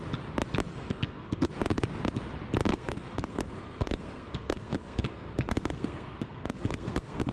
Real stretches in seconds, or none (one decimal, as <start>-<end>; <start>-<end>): 0.0-0.7; 1.5-2.7